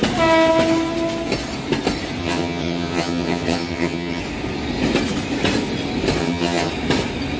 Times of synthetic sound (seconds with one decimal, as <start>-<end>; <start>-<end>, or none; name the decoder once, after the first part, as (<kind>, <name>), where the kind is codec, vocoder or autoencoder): 2.2-4.2 (vocoder, HiFi-GAN); 6.2-6.7